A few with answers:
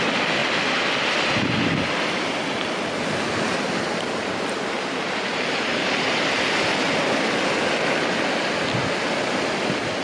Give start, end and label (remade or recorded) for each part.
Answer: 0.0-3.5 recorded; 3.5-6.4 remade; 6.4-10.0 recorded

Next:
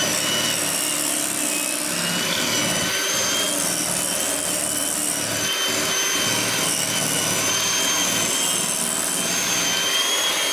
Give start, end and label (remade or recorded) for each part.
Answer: 0.0-10.5 recorded

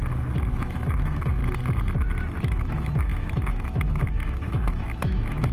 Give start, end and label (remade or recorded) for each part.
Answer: 0.0-0.5 recorded; 0.5-1.4 remade; 1.4-2.4 recorded; 2.4-5.5 remade

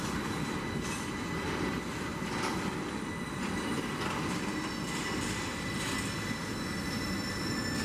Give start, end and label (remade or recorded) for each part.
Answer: 0.0-7.8 recorded

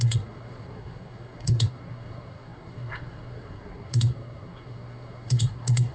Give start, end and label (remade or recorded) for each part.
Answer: 0.0-5.9 remade

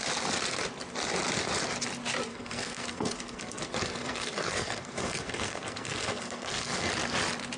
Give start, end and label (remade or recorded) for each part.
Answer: 0.0-2.3 recorded; 2.3-6.9 remade; 6.9-7.6 recorded